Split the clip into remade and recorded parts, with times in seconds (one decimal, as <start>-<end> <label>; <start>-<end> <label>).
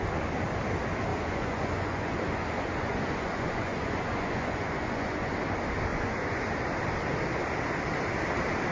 0.0-1.1 recorded; 1.1-5.3 remade; 5.3-5.9 recorded; 5.9-6.4 remade; 6.4-8.7 recorded